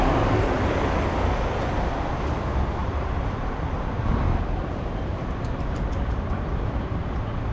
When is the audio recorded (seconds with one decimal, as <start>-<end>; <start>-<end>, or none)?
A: 0.0-2.8; 7.0-7.5